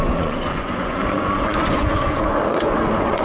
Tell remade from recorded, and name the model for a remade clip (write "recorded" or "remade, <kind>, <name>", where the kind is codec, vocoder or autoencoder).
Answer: remade, vocoder, Vocos